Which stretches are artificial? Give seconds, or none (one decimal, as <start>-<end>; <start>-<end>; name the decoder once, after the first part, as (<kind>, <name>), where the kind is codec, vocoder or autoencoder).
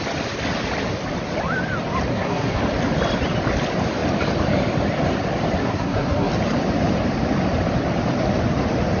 2.1-2.6 (codec, SNAC); 5.6-6.3